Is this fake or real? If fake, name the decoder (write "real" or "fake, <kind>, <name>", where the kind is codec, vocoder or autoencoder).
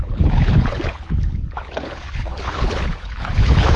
fake, codec, HILCodec